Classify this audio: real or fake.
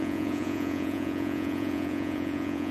fake